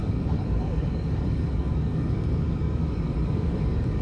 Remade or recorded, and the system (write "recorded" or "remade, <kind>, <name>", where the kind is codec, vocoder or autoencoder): remade, codec, DAC